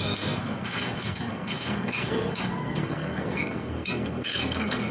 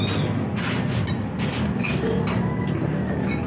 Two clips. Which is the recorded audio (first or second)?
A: second